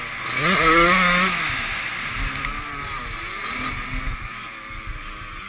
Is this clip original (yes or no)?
yes